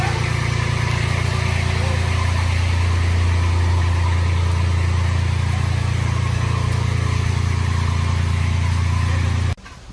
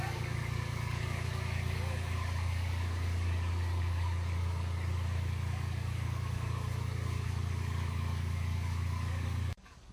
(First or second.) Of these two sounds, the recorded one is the first